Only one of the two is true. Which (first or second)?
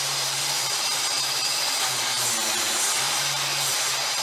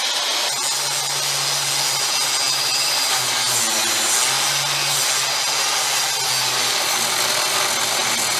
second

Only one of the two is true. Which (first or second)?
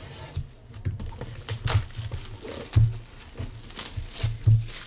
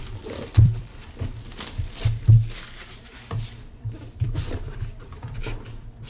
first